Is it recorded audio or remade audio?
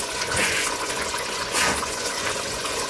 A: remade